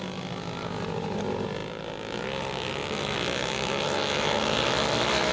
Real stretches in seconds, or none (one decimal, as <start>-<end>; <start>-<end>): 0.0-5.3